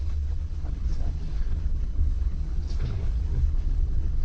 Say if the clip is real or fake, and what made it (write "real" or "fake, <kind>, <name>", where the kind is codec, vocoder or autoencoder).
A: fake, codec, HILCodec